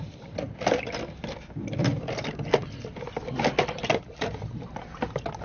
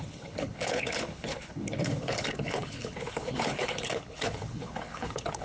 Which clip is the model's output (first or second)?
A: second